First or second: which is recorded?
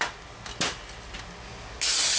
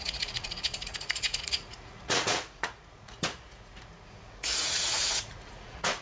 first